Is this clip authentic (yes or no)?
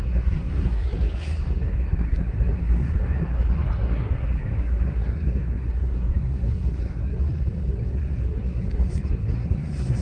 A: no